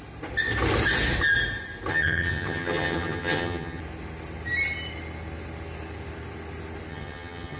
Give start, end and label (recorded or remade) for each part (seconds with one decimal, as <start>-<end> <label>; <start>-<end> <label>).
0.0-1.9 recorded; 1.9-3.8 remade; 3.8-6.9 recorded; 6.9-7.6 remade